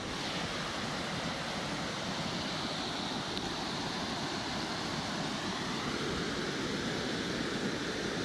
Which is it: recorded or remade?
recorded